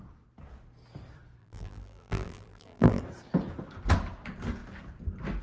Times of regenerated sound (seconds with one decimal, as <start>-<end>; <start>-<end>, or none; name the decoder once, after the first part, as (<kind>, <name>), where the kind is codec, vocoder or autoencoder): 1.4-3.0 (vocoder, BigVGAN v2)